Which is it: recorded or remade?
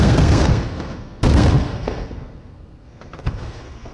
remade